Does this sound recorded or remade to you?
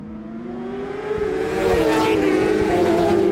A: remade